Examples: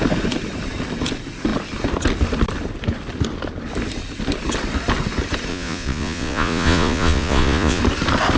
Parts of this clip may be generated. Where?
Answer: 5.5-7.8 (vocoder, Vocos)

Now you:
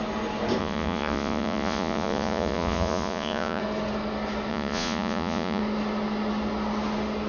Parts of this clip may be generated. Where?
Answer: 0.6-3.6 (vocoder, Vocos); 4.5-5.6